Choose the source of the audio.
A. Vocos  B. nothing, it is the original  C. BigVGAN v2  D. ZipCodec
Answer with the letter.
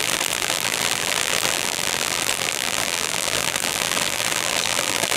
C